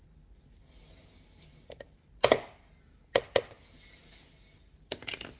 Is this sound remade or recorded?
recorded